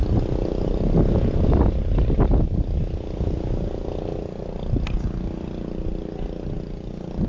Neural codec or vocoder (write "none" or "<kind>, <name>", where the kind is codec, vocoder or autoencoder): none